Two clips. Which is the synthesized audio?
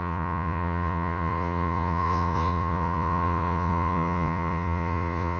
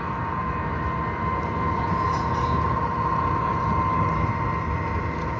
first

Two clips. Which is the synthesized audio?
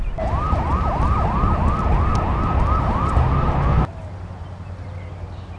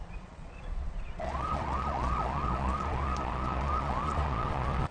second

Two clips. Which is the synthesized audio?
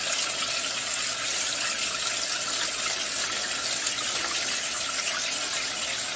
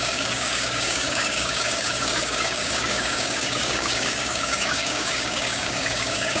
second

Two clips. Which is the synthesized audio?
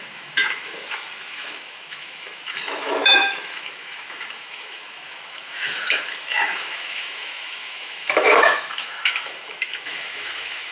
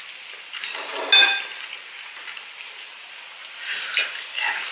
first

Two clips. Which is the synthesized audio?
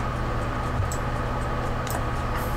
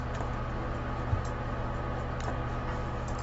first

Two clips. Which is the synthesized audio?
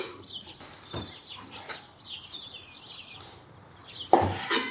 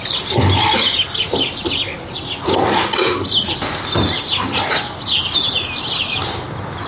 first